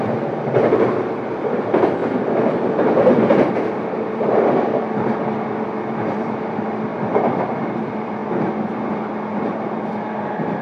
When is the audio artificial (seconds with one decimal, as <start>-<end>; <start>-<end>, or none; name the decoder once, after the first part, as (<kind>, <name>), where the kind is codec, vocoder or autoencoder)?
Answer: 0.0-6.9 (vocoder, BigVGAN v2); 7.4-8.2; 9.5-10.6